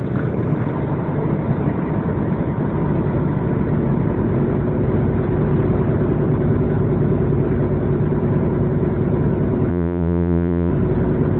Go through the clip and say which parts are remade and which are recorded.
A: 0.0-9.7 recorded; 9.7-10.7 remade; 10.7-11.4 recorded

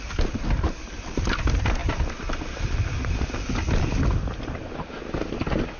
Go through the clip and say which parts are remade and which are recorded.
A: 0.0-5.8 recorded

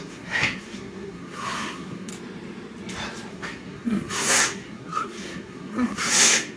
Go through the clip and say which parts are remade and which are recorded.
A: 0.0-2.1 remade; 2.1-3.3 recorded; 3.3-6.6 remade

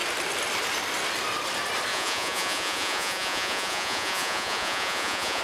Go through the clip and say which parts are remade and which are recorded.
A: 0.0-1.9 recorded; 1.9-5.4 remade

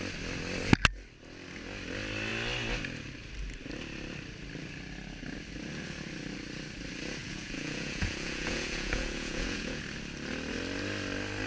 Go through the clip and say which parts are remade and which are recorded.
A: 0.0-7.2 recorded; 7.2-9.8 remade; 9.8-11.5 recorded

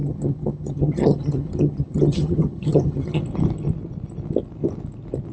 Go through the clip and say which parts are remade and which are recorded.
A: 0.0-3.2 remade; 3.2-5.3 recorded

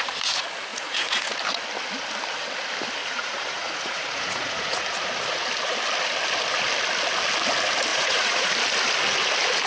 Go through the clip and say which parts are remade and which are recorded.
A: 0.0-0.7 recorded; 0.7-1.4 remade; 1.4-3.0 recorded; 3.0-4.8 remade; 4.8-7.9 recorded; 7.9-8.5 remade; 8.5-9.7 recorded